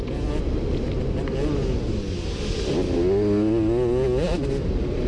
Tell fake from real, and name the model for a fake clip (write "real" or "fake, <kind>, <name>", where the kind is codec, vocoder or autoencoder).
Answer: real